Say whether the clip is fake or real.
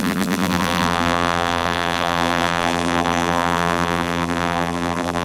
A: fake